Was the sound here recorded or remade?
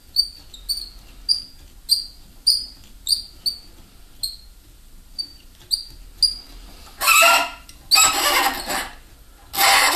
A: recorded